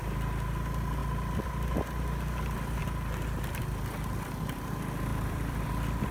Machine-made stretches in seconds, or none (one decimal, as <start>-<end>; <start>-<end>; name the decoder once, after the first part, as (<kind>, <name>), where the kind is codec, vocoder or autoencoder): 1.0-1.7 (vocoder, BigVGAN v2); 2.8-3.6; 5.1-6.1